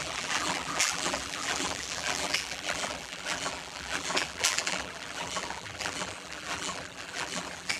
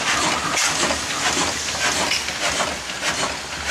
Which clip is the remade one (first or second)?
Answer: first